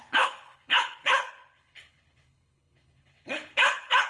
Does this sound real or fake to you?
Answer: fake